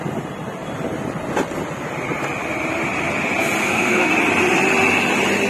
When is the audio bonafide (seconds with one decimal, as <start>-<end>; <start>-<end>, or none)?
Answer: 0.0-3.6; 4.1-5.5